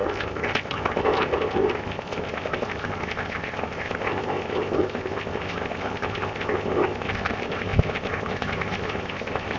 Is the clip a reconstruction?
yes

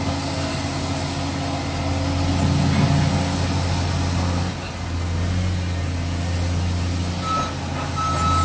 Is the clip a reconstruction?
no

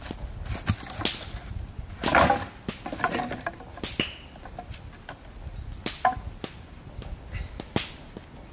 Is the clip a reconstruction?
no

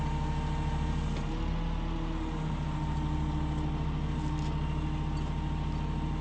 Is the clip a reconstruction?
no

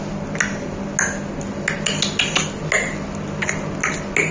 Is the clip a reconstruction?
no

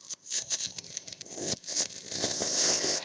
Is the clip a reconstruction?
yes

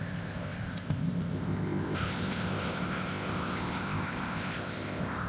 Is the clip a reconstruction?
yes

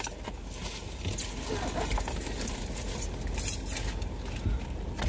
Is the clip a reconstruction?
no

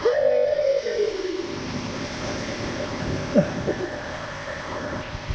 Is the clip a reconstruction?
yes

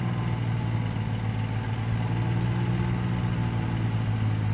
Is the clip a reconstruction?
no